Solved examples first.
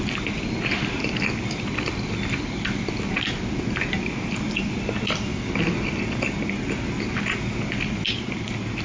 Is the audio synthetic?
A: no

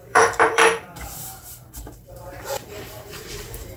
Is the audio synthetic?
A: yes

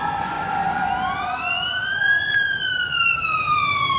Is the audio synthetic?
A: yes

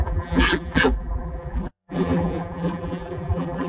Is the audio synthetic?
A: yes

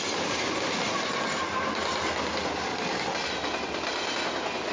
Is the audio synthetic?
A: no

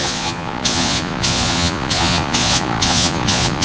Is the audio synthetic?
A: yes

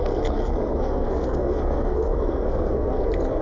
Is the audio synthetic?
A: yes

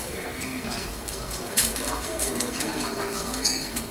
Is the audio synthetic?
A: yes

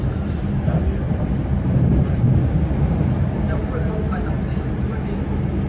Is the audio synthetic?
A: no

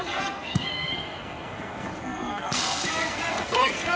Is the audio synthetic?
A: yes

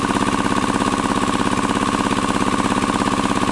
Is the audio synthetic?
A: no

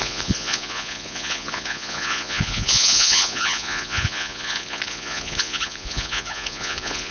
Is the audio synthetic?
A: yes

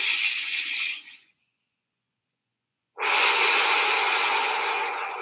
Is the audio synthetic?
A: yes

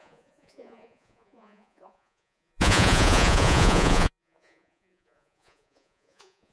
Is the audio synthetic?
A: yes